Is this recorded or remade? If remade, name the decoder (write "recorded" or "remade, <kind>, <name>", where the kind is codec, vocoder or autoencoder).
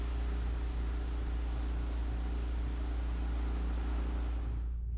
recorded